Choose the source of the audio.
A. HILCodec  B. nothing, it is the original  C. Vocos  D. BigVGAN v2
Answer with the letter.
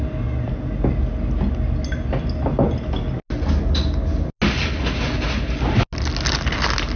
B